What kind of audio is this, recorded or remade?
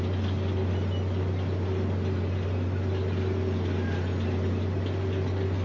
recorded